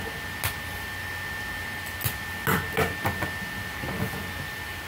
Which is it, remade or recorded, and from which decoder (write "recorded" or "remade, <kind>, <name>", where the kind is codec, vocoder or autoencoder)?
recorded